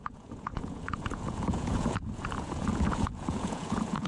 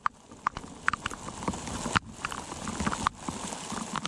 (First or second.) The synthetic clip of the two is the first